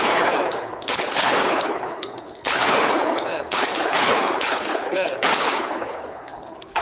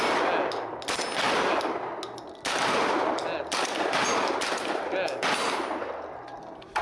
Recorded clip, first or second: second